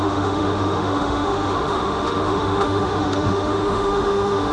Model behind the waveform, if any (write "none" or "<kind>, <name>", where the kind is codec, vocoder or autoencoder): autoencoder, DAC-VAE